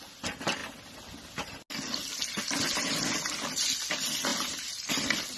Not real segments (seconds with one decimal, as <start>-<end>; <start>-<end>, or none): 4.3-4.9

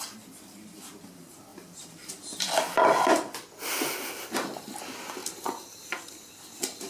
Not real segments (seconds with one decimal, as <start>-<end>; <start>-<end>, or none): 1.5-3.3; 5.2-6.0

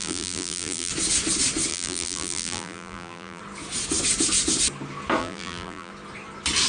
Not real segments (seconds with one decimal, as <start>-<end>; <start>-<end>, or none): 0.0-0.9; 1.7-3.4; 5.2-5.9

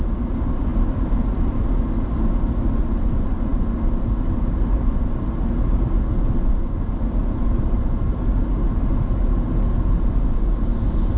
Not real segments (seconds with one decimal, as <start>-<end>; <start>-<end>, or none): 0.7-1.5

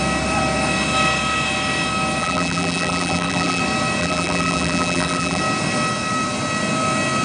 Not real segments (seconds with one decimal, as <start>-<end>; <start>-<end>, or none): 2.2-3.6; 4.0-5.4